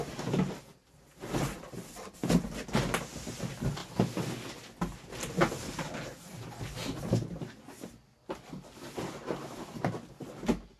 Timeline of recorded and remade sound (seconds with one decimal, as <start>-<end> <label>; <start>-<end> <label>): 0.0-10.8 recorded